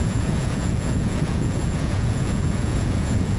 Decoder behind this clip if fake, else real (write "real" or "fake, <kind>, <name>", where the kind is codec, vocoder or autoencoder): fake, vocoder, Vocos